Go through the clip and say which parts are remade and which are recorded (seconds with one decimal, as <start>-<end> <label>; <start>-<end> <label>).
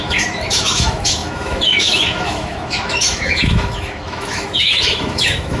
0.0-5.6 remade